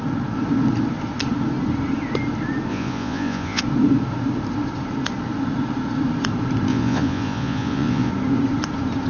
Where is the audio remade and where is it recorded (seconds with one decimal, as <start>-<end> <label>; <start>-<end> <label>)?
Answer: 0.0-2.7 recorded; 2.7-3.6 remade; 3.6-6.7 recorded; 6.7-8.1 remade; 8.1-9.1 recorded